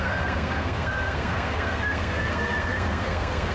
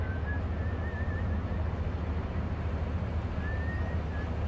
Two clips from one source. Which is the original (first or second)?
second